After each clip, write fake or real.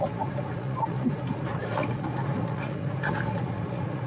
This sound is fake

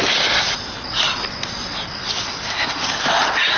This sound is real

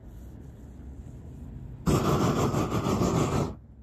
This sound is real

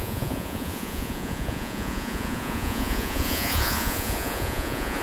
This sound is fake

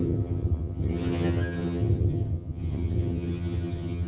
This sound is fake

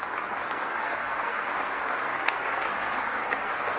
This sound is fake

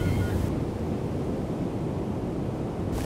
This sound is real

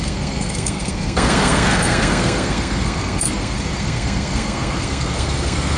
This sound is fake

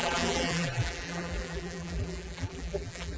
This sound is fake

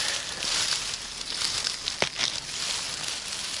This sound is real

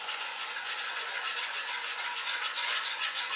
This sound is fake